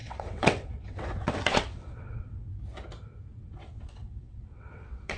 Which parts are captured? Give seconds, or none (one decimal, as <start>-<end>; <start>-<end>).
2.5-3.3